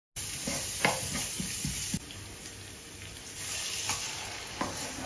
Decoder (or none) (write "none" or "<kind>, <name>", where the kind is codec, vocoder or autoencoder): none